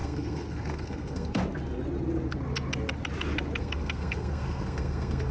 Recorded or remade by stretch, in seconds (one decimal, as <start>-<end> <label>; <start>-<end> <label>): 0.0-1.4 remade; 1.4-3.6 recorded; 3.6-5.3 remade